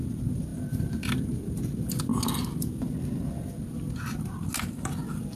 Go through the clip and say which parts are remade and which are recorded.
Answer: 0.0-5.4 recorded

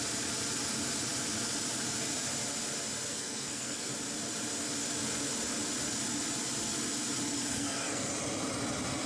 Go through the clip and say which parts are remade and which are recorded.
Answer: 0.0-3.1 recorded; 3.1-3.9 remade; 3.9-7.5 recorded; 7.5-8.1 remade; 8.1-9.1 recorded

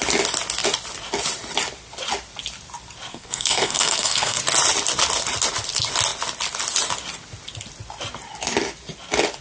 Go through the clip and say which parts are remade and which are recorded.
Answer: 0.0-3.1 recorded; 3.1-4.4 remade; 4.4-9.4 recorded

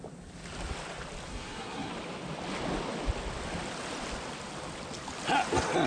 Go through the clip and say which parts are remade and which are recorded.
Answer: 0.0-1.3 recorded; 1.3-1.9 remade; 1.9-5.9 recorded

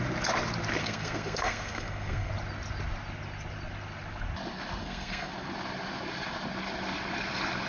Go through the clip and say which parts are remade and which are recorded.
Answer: 0.0-0.8 recorded; 0.8-2.3 remade; 2.3-4.8 recorded; 4.8-5.3 remade; 5.3-7.7 recorded

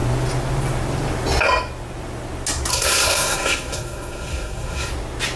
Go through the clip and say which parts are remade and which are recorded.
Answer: 0.0-2.7 recorded; 2.7-4.9 remade; 4.9-5.4 recorded

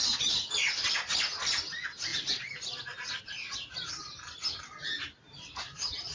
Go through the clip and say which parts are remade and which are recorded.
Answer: 0.0-6.1 recorded

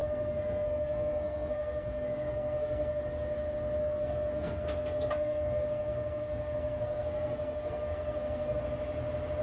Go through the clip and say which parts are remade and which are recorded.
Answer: 0.0-3.0 remade; 3.0-3.8 recorded; 3.8-8.6 remade; 8.6-9.4 recorded